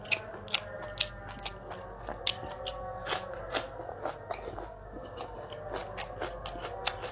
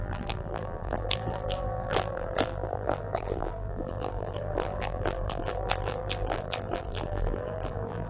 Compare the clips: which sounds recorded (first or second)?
first